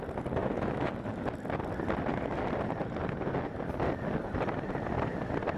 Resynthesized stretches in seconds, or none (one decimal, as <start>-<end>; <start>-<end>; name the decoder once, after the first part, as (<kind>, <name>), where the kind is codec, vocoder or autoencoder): 0.4-0.9 (autoencoder, DAC-VAE)